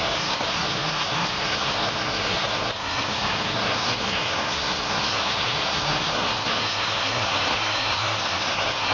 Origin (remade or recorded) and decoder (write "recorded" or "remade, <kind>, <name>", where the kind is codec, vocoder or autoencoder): remade, codec, SNAC